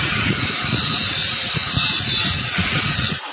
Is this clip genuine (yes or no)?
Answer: no